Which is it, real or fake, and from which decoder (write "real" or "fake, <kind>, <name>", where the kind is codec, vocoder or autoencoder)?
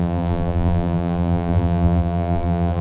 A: fake, vocoder, BigVGAN v2